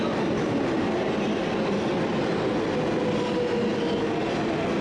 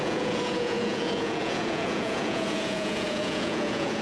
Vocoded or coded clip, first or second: second